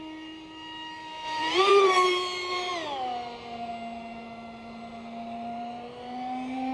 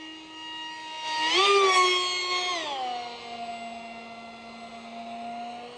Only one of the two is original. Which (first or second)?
second